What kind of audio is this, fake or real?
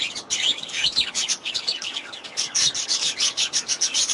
fake